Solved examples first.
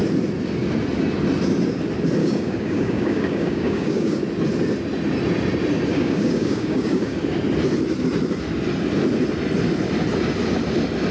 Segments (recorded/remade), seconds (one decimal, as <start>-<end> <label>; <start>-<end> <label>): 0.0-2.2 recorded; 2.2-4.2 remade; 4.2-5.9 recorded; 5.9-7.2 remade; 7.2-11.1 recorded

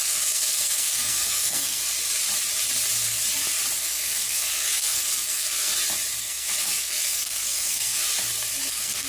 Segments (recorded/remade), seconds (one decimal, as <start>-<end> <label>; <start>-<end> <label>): 0.0-1.8 remade; 1.8-3.8 recorded; 3.8-5.7 remade; 5.7-6.2 recorded; 6.2-8.0 remade; 8.0-8.7 recorded; 8.7-9.1 remade

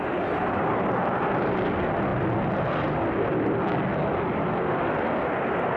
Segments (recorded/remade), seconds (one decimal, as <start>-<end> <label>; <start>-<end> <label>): 0.0-5.8 recorded

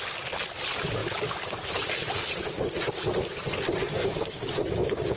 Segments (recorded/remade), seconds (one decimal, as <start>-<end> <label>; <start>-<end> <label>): 0.0-3.9 recorded; 3.9-5.2 remade